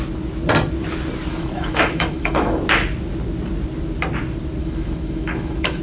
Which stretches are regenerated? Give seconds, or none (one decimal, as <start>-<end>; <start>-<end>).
1.3-2.6; 4.6-5.8